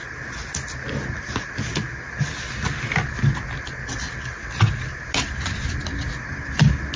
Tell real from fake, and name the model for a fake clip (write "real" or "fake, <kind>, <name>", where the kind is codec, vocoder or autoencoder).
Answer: real